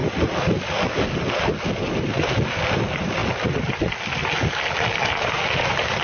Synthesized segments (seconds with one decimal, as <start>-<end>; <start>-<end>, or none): none